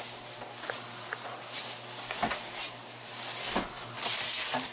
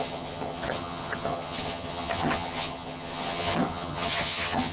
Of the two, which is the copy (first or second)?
second